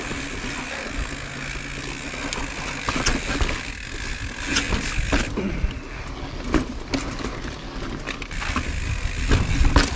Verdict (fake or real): real